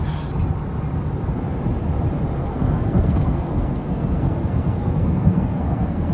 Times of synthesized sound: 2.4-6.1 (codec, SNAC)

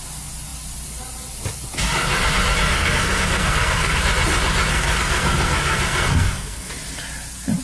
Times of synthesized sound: 2.7-4.0 (codec, SNAC); 4.7-6.7

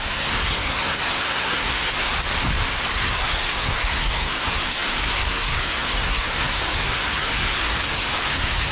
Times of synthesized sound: 0.0-2.1 (codec, SNAC); 2.9-8.7

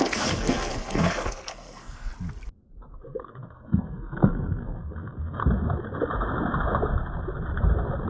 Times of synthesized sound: 0.0-2.1 (codec, SNAC); 2.9-5.4